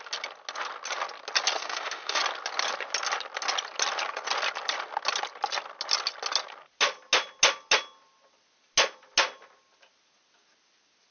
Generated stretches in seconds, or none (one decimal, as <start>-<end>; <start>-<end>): 1.6-2.2

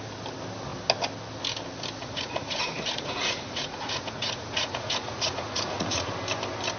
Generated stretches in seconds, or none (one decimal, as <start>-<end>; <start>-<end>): 2.0-6.1

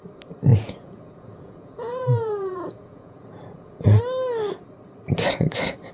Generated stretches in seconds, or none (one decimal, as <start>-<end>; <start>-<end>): 0.5-4.0